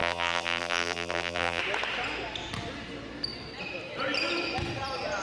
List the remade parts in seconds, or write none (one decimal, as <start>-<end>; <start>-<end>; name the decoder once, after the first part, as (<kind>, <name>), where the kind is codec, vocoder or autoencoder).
0.0-1.6 (vocoder, BigVGAN v2)